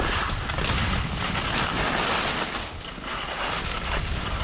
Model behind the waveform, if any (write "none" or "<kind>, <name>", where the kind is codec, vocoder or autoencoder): none